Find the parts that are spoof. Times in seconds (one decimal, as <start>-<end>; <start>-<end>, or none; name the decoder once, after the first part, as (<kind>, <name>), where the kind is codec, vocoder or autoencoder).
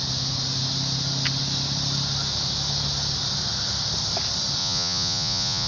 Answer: 4.6-5.7 (vocoder, Vocos)